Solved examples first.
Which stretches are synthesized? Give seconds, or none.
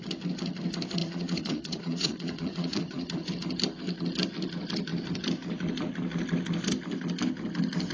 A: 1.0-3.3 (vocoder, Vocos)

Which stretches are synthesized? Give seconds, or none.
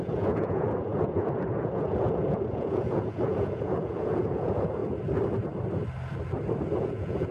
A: 0.0-4.8 (vocoder, Vocos); 6.8-7.3